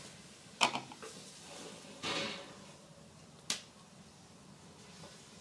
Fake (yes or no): no